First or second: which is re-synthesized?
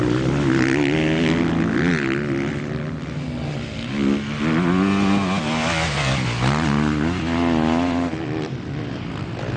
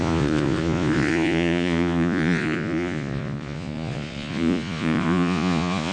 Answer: second